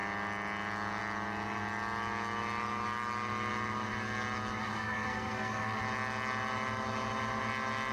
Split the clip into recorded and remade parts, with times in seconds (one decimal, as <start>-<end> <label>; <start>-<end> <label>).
0.0-4.6 recorded; 4.6-5.8 remade; 5.8-7.9 recorded